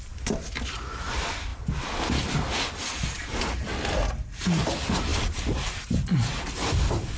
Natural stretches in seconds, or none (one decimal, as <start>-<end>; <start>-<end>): 0.0-7.2